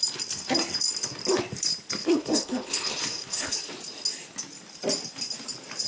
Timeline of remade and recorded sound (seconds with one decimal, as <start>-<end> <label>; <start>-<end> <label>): 0.0-2.0 recorded; 2.0-3.7 remade; 3.7-5.9 recorded